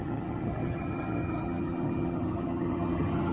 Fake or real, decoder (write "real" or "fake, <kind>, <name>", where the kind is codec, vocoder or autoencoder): fake, vocoder, HiFi-GAN